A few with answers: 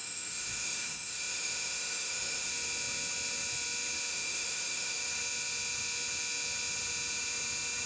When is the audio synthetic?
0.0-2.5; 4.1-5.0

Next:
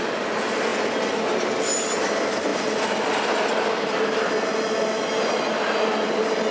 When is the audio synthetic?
none